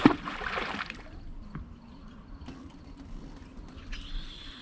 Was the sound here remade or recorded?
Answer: recorded